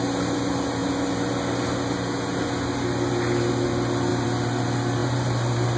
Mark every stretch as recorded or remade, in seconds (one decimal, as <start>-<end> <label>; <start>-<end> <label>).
0.0-4.1 recorded; 4.1-4.6 remade; 4.6-5.0 recorded; 5.0-5.8 remade